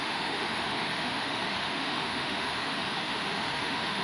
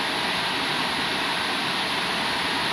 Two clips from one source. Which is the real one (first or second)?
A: second